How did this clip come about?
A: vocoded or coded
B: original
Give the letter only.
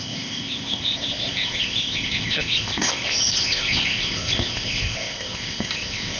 A